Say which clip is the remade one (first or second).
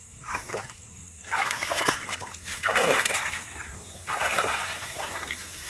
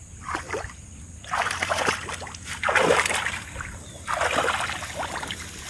first